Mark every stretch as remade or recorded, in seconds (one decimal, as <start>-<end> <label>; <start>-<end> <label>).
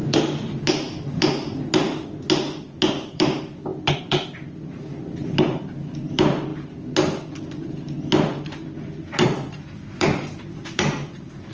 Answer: 0.0-2.9 recorded; 2.9-6.5 remade; 6.5-7.5 recorded; 7.5-11.5 remade